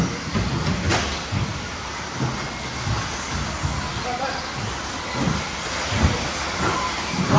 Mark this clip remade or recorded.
recorded